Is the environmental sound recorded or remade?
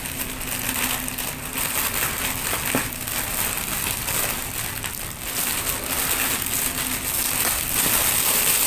recorded